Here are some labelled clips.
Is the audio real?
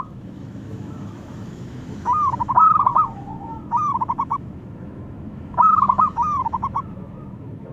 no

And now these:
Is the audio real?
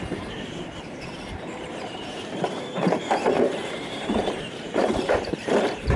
no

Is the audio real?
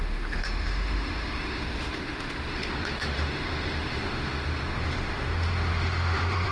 no